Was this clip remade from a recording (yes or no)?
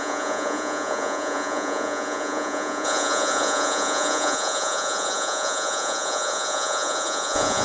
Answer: yes